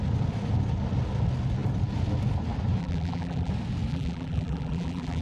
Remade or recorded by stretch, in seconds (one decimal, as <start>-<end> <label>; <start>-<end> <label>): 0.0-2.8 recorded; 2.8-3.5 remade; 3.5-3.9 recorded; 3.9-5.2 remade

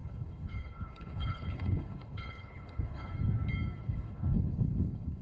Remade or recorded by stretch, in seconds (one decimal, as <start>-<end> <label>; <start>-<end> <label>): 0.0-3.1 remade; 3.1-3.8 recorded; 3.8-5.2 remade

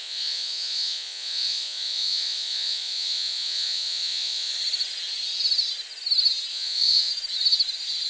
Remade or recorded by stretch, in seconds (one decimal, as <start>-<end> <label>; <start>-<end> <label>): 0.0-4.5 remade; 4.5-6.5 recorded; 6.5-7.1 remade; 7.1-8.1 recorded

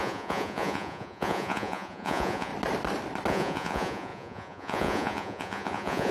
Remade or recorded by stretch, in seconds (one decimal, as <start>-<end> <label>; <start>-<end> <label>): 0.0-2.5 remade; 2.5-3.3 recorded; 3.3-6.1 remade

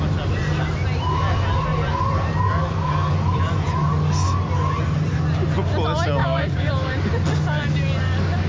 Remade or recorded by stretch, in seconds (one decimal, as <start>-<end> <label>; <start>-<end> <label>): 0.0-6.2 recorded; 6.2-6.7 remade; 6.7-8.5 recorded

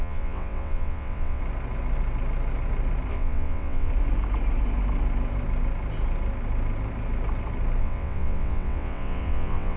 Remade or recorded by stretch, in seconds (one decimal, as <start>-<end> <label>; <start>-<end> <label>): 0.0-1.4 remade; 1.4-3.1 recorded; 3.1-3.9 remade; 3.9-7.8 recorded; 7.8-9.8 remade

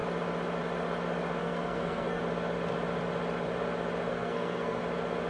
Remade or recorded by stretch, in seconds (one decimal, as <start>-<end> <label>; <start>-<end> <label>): 0.0-1.4 recorded; 1.4-2.2 remade; 2.2-4.1 recorded; 4.1-4.8 remade; 4.8-5.3 recorded

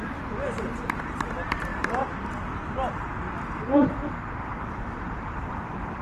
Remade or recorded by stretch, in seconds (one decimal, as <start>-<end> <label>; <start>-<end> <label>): 0.0-6.0 remade